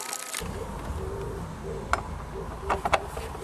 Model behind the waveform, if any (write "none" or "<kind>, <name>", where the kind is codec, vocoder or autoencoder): none